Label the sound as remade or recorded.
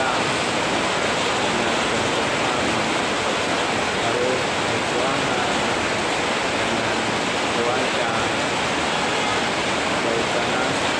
recorded